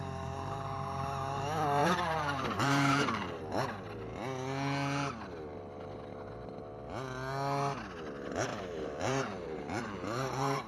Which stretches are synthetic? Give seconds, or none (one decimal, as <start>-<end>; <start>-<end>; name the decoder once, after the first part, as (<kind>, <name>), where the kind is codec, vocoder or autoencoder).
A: 1.8-3.4 (vocoder, BigVGAN v2); 8.5-10.7